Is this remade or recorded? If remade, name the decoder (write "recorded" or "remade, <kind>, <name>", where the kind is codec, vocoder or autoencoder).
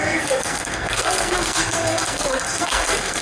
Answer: remade, codec, SNAC